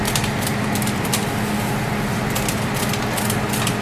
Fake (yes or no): no